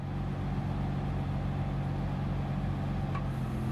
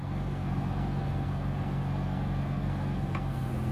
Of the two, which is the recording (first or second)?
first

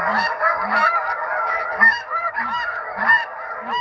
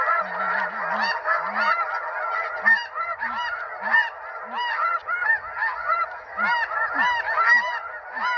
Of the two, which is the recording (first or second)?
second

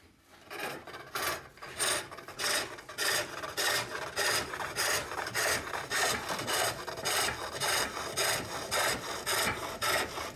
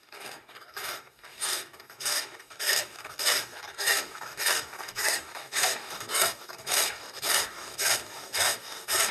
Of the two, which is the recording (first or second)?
first